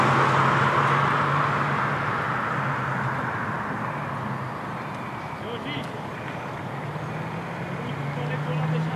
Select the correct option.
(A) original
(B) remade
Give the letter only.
A